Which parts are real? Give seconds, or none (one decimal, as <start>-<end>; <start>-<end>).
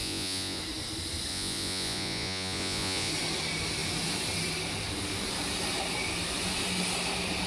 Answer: 0.6-1.3; 3.1-7.5